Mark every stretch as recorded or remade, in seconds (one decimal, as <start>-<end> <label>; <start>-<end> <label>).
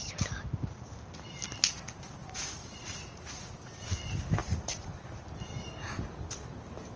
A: 0.0-2.2 recorded; 2.2-3.7 remade; 3.7-4.4 recorded; 4.4-4.9 remade; 4.9-7.0 recorded